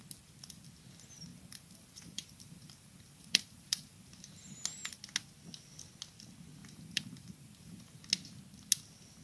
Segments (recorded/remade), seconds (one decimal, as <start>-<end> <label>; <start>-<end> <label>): 0.0-1.3 recorded; 1.3-4.1 remade; 4.1-6.6 recorded; 6.6-8.0 remade; 8.0-9.2 recorded

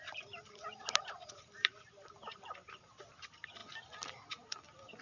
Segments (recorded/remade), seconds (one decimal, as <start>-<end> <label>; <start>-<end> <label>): 0.0-3.0 remade; 3.0-5.0 recorded

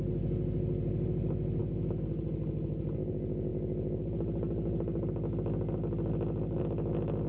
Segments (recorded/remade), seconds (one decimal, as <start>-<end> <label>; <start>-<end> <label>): 0.0-7.3 recorded